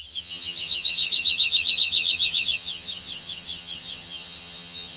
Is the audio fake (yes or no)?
yes